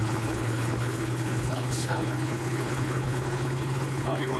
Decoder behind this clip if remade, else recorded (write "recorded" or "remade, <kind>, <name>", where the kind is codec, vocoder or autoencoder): remade, codec, HILCodec